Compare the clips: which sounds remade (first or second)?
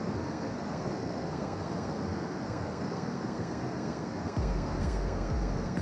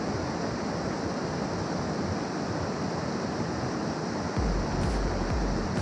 first